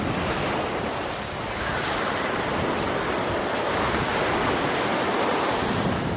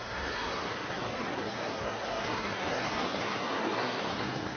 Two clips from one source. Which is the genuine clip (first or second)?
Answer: first